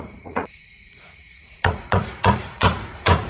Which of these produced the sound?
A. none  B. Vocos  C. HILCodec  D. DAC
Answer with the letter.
B